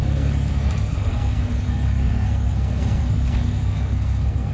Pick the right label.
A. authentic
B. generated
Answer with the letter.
B